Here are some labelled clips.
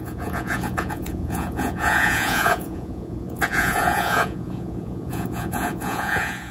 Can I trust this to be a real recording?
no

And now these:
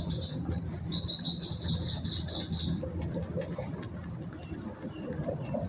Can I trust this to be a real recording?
yes